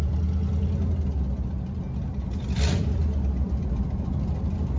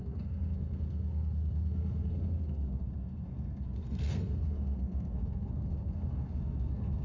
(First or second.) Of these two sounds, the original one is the first